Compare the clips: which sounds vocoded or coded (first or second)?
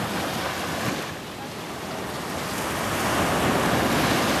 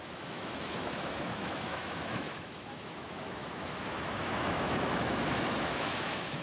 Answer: second